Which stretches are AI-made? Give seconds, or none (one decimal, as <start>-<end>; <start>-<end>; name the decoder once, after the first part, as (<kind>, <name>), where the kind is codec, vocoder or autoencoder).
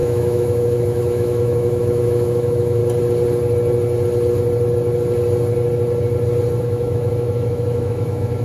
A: 0.0-2.8 (autoencoder, DAC-VAE); 6.6-8.4